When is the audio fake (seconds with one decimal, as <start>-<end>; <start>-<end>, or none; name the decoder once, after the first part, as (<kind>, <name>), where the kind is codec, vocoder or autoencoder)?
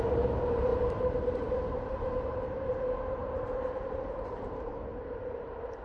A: 0.0-5.8 (vocoder, BigVGAN v2)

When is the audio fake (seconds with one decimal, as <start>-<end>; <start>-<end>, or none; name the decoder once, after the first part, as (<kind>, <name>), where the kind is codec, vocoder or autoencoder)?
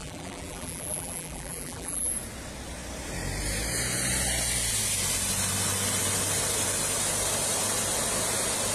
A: 0.0-2.1 (vocoder, BigVGAN v2)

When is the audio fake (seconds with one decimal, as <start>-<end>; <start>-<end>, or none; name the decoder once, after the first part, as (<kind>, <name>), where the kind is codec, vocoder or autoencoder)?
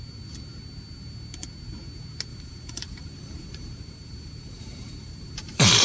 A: 2.3-5.8 (vocoder, BigVGAN v2)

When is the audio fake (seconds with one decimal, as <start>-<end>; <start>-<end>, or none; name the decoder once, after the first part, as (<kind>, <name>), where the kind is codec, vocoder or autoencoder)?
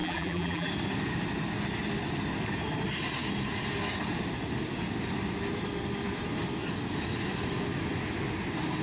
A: 0.0-0.7 (vocoder, BigVGAN v2)